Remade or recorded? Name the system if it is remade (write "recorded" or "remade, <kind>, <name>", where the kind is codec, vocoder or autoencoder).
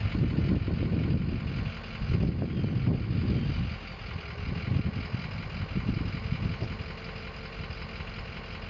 recorded